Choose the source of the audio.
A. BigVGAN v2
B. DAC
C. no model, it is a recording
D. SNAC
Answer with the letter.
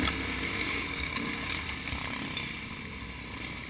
C